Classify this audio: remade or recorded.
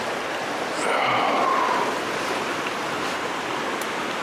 recorded